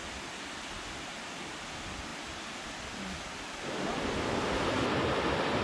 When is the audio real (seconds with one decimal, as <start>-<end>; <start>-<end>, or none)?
0.0-5.6